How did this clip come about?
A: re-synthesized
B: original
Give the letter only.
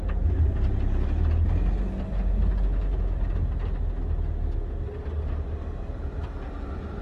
B